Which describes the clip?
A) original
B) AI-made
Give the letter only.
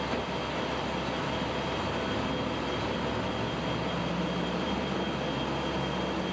A